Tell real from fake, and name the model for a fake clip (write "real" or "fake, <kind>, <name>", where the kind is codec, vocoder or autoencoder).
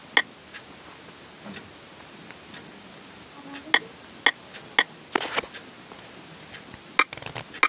real